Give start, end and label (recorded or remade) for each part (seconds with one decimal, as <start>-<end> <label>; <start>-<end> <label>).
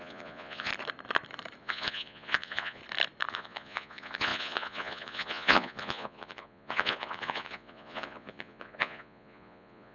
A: 0.0-0.7 remade; 0.7-1.6 recorded; 1.6-2.8 remade; 2.8-3.3 recorded; 3.3-9.9 remade